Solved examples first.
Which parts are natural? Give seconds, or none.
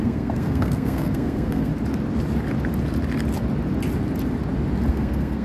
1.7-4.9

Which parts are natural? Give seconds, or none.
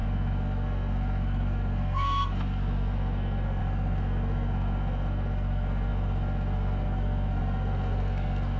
none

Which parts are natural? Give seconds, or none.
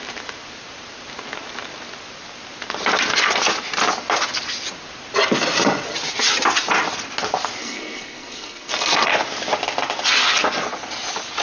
0.0-7.6; 9.1-11.4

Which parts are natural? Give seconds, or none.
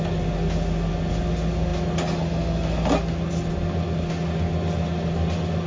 0.0-5.7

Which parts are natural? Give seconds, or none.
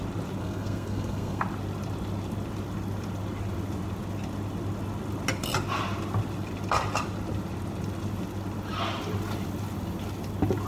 0.0-0.4; 1.4-10.7